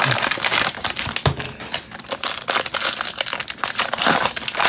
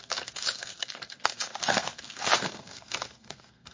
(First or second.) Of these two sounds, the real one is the first